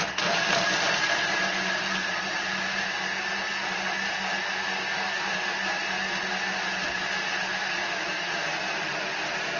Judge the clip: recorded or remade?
recorded